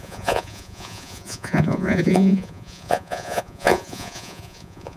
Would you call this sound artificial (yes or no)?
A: yes